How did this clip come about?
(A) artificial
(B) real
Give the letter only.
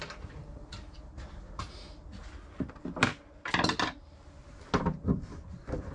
B